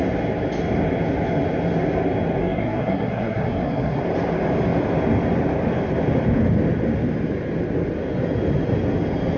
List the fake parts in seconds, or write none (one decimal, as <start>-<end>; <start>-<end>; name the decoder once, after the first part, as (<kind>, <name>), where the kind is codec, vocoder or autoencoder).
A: 2.4-4.0 (codec, SNAC)